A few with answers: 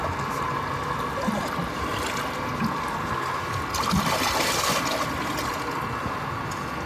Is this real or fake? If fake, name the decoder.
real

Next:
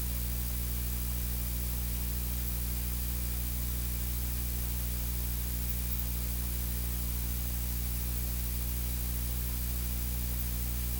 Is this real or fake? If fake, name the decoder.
real